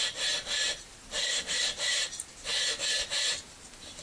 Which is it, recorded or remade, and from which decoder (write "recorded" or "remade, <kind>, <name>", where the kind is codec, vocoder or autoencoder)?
recorded